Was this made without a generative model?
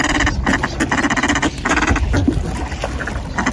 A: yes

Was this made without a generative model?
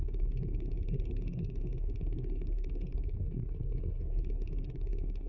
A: no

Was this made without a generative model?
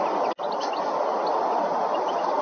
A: yes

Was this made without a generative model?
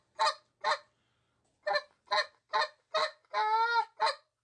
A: yes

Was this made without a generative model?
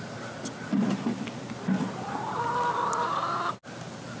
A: yes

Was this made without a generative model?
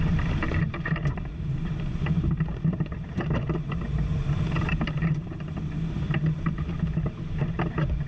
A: no